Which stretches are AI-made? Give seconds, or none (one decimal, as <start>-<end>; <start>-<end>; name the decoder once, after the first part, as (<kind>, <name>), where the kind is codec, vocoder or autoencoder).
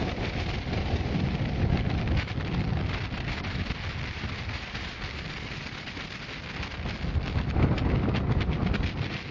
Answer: 0.0-4.9 (vocoder, BigVGAN v2)